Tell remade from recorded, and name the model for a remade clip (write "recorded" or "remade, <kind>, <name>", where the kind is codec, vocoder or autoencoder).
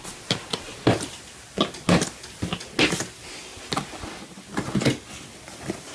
recorded